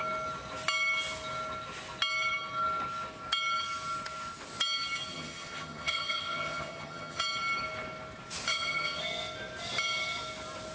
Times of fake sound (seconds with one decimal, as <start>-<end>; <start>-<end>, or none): 5.1-7.2; 8.5-9.0